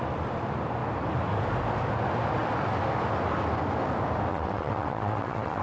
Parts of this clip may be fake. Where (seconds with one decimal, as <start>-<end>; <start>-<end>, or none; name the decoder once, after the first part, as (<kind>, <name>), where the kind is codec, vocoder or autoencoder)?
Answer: 4.3-5.6 (vocoder, WaveNeXt)